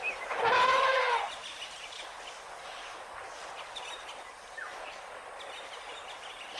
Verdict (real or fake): real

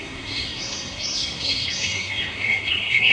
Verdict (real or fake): fake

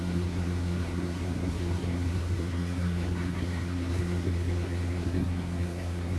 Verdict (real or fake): fake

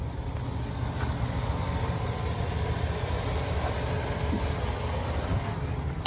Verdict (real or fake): real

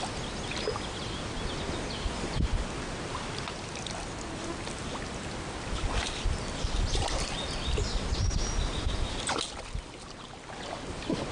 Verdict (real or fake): real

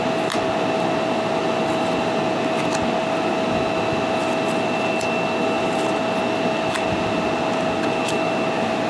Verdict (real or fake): real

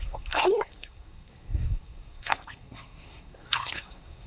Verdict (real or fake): fake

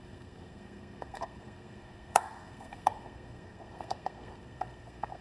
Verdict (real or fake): fake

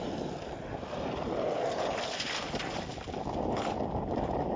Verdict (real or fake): real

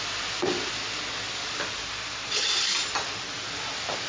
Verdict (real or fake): real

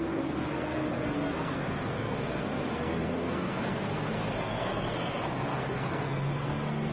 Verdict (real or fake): fake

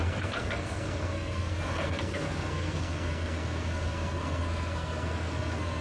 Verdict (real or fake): fake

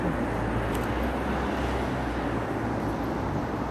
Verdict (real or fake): real